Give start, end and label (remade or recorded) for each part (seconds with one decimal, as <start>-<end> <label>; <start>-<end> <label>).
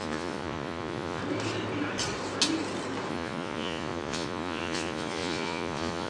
0.0-1.2 remade; 1.2-3.1 recorded; 3.1-6.1 remade